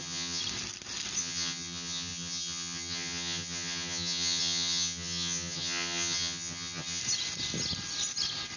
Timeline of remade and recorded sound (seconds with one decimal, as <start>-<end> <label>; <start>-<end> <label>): 0.0-0.4 remade; 0.4-1.2 recorded; 1.2-7.0 remade; 7.0-8.6 recorded